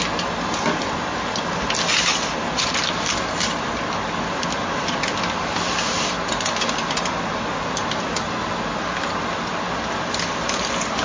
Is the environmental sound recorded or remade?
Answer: recorded